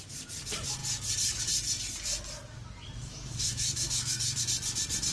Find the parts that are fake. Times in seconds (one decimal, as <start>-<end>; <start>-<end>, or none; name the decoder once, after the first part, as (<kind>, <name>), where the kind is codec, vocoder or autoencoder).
3.0-4.4 (autoencoder, DAC-VAE)